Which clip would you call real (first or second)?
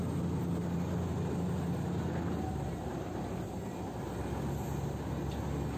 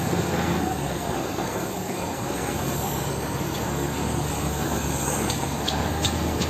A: first